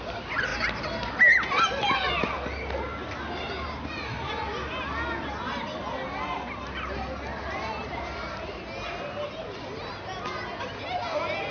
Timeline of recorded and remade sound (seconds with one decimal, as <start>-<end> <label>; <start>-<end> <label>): 0.0-11.5 recorded

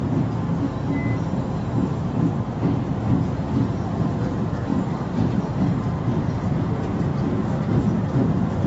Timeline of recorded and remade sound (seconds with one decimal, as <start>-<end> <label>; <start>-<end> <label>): 0.0-4.7 recorded; 4.7-5.5 remade; 5.5-8.7 recorded

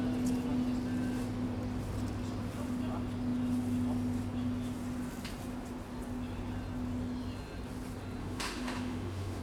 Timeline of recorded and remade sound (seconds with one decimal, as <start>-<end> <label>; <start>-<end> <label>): 0.0-8.2 recorded; 8.2-9.4 remade

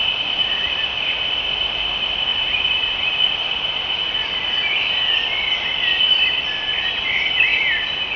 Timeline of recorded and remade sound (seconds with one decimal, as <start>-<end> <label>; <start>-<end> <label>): 0.0-8.2 recorded

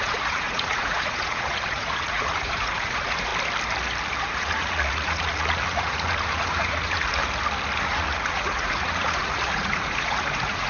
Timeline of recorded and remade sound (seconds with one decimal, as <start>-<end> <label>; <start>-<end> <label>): 0.0-3.3 remade; 3.3-4.2 recorded; 4.2-7.2 remade; 7.2-7.8 recorded; 7.8-10.7 remade

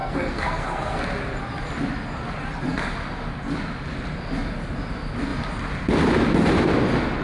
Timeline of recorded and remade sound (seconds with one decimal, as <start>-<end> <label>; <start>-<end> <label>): 0.0-1.0 remade; 1.0-7.2 recorded

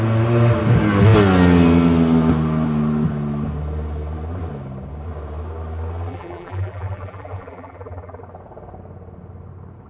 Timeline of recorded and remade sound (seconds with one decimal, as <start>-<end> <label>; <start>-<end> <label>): 0.0-6.1 recorded; 6.1-8.2 remade; 8.2-9.9 recorded